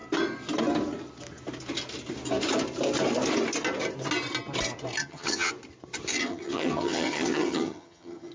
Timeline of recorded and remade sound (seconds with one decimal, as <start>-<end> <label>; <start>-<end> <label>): 0.0-5.0 recorded; 5.0-5.5 remade; 5.5-6.3 recorded; 6.3-8.3 remade